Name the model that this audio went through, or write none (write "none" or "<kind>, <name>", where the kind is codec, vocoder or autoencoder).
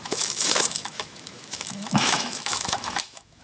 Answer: autoencoder, DAC-VAE